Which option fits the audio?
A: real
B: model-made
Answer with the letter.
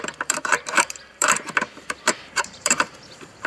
B